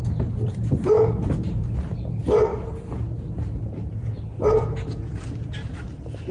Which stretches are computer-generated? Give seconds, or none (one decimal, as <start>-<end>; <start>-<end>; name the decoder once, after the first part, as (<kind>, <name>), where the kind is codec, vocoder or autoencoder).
none